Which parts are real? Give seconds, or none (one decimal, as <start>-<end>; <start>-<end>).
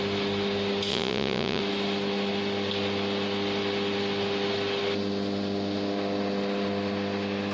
0.0-0.9; 1.6-7.5